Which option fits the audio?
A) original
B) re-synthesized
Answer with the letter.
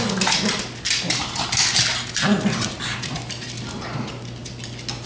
A